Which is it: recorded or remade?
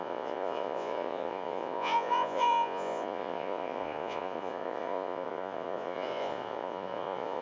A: remade